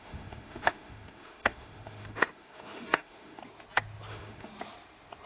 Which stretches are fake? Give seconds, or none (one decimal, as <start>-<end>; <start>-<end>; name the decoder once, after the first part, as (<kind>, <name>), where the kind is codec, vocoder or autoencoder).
0.0-3.4 (autoencoder, DAC-VAE); 4.1-4.5